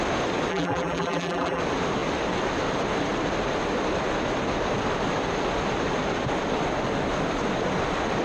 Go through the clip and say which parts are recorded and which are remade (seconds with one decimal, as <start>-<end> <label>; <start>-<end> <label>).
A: 0.0-0.5 recorded; 0.5-1.6 remade; 1.6-8.2 recorded